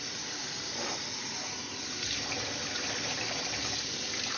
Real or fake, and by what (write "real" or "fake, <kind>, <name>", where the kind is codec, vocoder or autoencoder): real